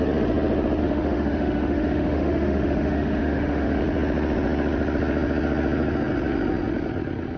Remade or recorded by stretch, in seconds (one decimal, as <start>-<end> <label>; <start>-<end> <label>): 0.0-0.8 recorded; 0.8-3.8 remade; 3.8-7.4 recorded